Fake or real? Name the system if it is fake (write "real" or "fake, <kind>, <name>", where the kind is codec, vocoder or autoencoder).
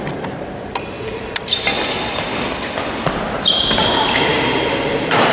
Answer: real